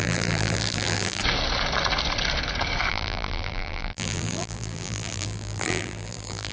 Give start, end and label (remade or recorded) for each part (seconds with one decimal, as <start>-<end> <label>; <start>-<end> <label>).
0.0-1.2 remade; 1.2-2.9 recorded; 2.9-6.5 remade